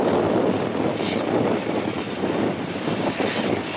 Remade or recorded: recorded